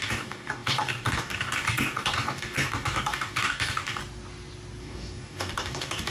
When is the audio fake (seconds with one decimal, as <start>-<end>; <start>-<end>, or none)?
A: 0.0-4.0; 4.8-6.1

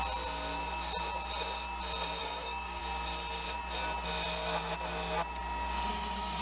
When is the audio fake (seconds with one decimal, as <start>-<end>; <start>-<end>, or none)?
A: 2.2-2.8; 5.9-6.4

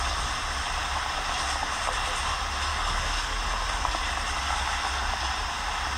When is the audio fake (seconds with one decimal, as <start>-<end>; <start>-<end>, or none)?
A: 2.7-3.4

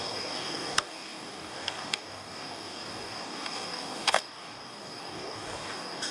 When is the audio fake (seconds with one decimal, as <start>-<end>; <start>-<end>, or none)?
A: 0.0-6.1

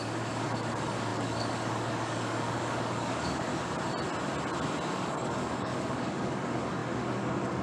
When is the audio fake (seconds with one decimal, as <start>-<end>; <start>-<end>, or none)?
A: 0.0-3.5; 4.9-7.6

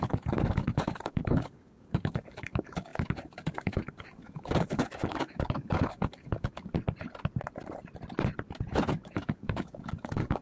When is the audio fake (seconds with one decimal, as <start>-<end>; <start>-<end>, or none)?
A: 0.0-6.7; 8.7-10.4

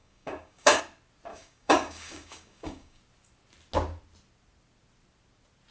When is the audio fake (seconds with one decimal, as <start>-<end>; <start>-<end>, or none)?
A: 0.0-0.8; 1.3-3.0

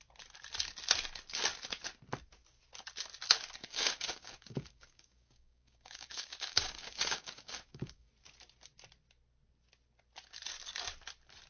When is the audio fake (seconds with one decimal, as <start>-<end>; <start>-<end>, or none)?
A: 3.6-8.1